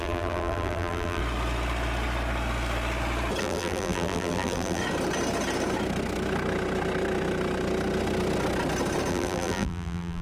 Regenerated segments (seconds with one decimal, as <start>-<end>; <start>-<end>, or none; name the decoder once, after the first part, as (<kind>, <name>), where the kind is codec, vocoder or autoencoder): 0.0-1.2 (vocoder, BigVGAN v2); 3.4-4.8; 9.1-10.2